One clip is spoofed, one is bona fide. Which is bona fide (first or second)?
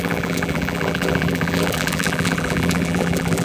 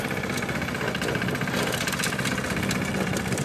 second